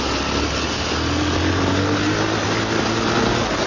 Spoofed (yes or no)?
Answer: no